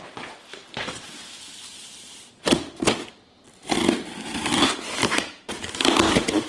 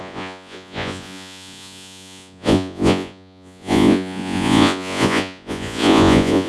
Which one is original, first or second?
first